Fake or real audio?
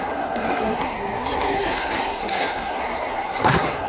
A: fake